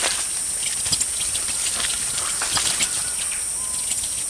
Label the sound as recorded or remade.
recorded